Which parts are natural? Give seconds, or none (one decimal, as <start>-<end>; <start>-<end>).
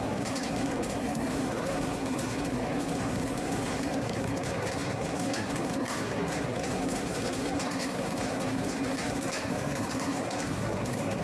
none